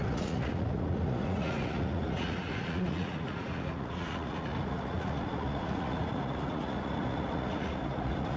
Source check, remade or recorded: remade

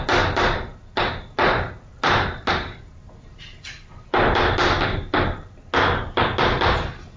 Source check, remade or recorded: recorded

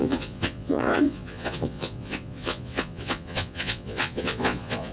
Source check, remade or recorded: remade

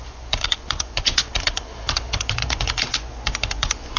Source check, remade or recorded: remade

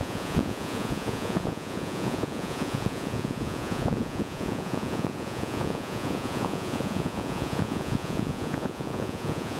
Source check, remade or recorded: remade